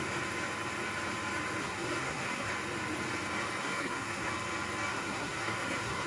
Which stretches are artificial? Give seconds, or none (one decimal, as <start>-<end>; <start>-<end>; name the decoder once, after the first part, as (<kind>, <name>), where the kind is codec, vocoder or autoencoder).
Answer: 1.6-2.5 (codec, SNAC); 3.6-4.3; 4.9-6.1